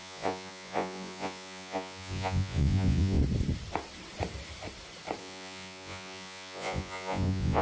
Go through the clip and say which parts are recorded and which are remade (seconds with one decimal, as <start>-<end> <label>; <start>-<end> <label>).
0.0-3.2 remade; 3.2-5.2 recorded; 5.2-7.6 remade